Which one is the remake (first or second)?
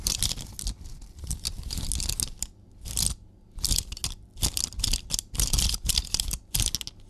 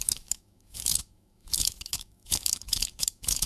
second